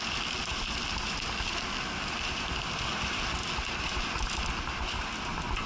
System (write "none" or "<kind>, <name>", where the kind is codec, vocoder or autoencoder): none